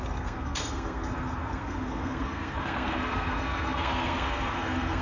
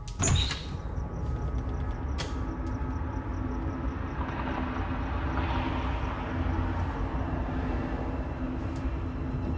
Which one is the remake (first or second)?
first